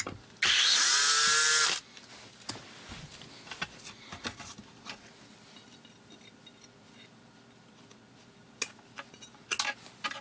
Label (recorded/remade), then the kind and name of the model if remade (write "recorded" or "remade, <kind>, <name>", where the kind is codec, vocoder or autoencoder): recorded